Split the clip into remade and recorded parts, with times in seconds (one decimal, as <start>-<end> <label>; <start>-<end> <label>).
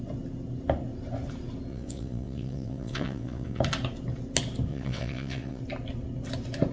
0.0-1.7 recorded; 1.7-3.6 remade; 3.6-4.7 recorded; 4.7-5.6 remade; 5.6-6.7 recorded